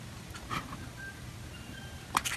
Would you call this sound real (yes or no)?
yes